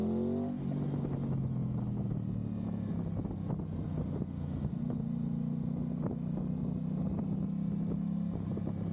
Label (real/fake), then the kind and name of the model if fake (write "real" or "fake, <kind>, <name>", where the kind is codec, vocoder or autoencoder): real